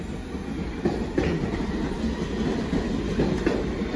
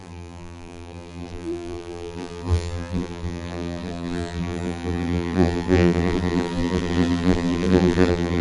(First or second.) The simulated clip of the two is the second